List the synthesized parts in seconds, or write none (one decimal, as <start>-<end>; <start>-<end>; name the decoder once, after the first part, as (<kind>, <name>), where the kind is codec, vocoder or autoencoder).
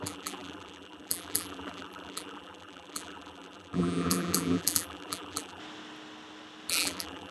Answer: 0.0-5.6 (vocoder, BigVGAN v2); 6.7-7.3